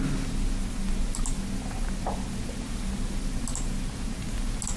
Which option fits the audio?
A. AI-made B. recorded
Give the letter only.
B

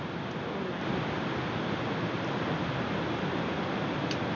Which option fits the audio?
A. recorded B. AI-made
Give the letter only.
A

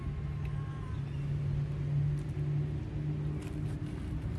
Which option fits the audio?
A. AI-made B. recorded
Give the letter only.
B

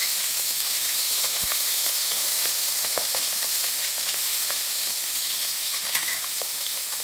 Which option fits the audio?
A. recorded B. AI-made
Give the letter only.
B